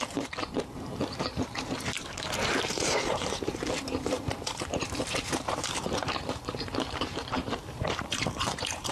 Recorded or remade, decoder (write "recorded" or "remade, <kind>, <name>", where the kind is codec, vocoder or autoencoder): remade, vocoder, BigVGAN v2